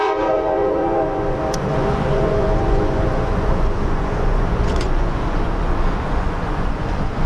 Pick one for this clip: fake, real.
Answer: fake